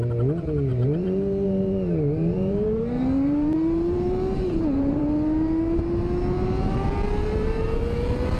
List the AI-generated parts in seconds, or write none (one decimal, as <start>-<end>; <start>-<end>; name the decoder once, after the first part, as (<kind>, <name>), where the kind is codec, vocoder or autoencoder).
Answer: 0.7-5.0 (vocoder, BigVGAN v2); 7.2-7.8